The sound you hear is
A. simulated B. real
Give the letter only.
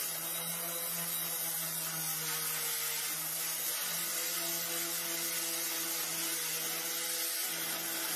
B